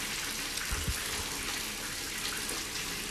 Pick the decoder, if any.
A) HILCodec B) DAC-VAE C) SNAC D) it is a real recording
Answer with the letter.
D